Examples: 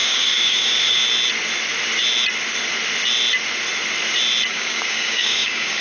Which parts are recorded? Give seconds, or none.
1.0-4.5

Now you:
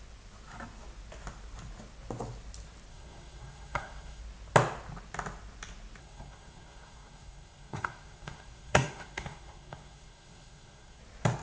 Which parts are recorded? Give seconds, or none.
0.0-2.9; 4.2-6.0; 11.0-11.4

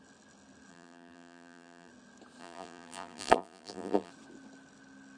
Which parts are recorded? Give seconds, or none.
0.0-0.7; 1.9-2.4; 4.1-5.2

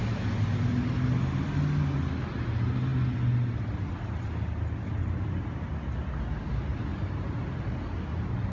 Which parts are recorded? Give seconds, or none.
0.0-8.5

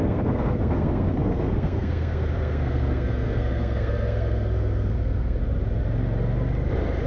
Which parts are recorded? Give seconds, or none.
5.4-7.1

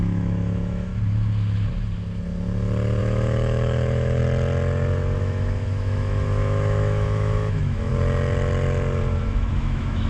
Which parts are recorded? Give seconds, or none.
0.9-3.0; 4.2-5.2; 7.9-9.2

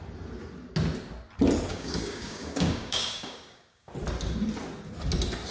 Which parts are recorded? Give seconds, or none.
0.0-1.7; 3.9-5.5